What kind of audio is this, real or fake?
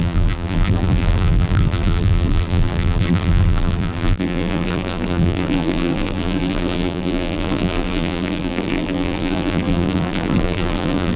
fake